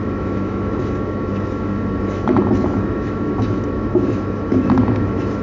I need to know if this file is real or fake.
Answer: fake